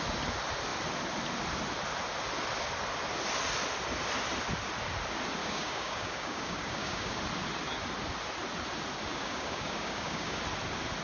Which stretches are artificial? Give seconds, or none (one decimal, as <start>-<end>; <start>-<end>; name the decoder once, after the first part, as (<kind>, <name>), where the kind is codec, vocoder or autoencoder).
5.4-7.2 (codec, DAC); 9.1-10.4